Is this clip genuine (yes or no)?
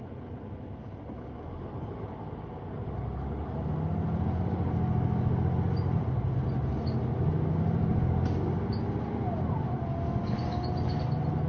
yes